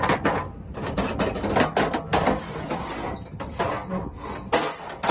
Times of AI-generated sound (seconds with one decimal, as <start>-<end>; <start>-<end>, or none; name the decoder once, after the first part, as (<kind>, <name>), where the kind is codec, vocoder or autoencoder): none